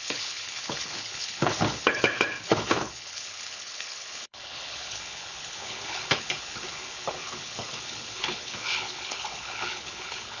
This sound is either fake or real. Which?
fake